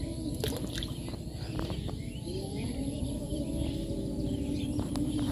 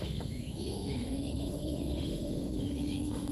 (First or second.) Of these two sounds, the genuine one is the first